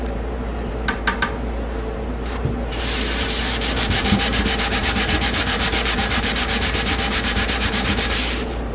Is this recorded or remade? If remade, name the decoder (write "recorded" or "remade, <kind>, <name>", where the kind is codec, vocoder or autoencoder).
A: remade, vocoder, BigVGAN v2